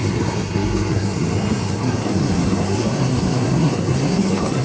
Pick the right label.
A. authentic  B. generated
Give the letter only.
B